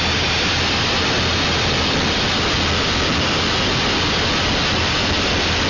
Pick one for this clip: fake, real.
real